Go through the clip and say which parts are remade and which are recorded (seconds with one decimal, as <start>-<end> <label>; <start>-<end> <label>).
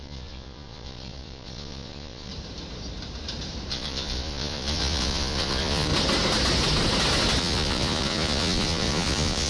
0.0-2.3 remade; 2.3-3.7 recorded; 3.7-5.9 remade; 5.9-7.4 recorded; 7.4-9.5 remade